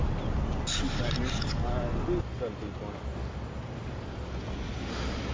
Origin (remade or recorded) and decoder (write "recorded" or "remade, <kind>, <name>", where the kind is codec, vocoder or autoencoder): recorded